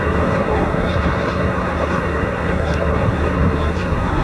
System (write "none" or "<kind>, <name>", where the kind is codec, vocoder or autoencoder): codec, SNAC